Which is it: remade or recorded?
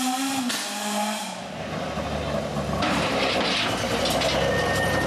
recorded